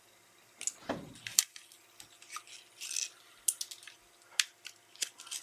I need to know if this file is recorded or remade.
recorded